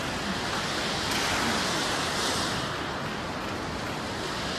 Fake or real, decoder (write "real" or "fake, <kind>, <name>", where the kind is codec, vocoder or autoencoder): real